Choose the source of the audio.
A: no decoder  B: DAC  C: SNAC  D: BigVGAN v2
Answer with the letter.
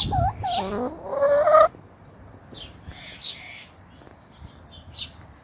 A